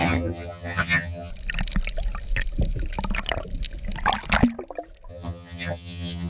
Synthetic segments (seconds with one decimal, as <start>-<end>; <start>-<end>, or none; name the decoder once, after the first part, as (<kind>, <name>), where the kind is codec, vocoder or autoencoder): 0.0-1.3 (vocoder, HiFi-GAN); 5.1-6.3